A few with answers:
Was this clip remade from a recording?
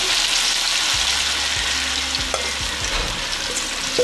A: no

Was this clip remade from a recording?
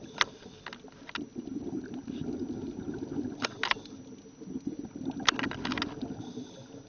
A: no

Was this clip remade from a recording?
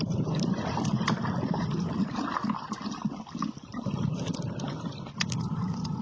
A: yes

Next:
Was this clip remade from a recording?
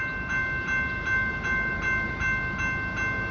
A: no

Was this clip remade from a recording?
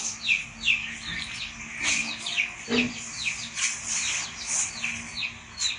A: no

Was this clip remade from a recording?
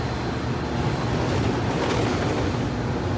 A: no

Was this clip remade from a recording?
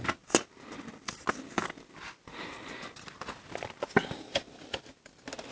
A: no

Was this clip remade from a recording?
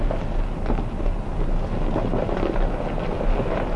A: no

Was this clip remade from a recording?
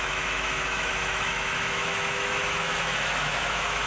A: yes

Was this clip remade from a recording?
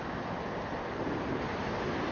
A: no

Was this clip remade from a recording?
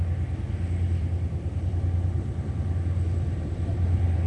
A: yes